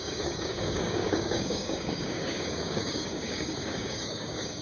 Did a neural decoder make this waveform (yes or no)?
yes